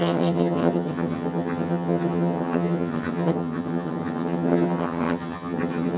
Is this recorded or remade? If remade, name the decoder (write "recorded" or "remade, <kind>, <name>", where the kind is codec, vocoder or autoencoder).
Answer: remade, vocoder, HiFi-GAN